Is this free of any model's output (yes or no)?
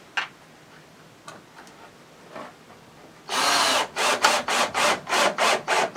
yes